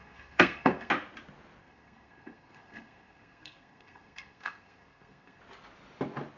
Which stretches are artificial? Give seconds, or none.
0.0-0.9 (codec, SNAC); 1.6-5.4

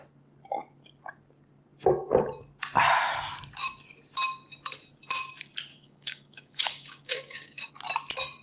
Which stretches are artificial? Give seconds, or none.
5.7-7.7 (codec, DAC)

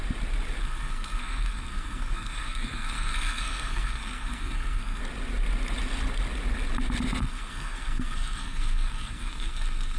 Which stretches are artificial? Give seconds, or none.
0.6-5.0 (codec, SNAC); 7.2-10.0

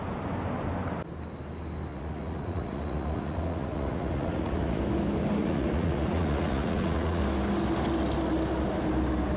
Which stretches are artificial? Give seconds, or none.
1.9-4.8 (vocoder, Vocos); 5.4-7.2

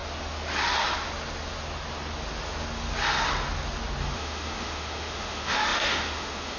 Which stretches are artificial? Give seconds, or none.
4.0-6.6 (autoencoder, DAC-VAE)

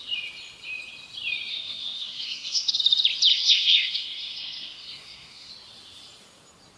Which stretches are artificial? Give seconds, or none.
1.5-2.8 (codec, SNAC); 3.3-5.5

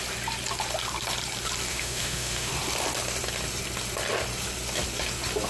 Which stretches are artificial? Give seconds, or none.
1.7-2.5 (autoencoder, DAC-VAE)